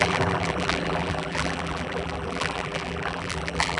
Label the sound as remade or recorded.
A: remade